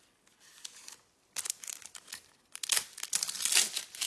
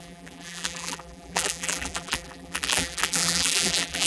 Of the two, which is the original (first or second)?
first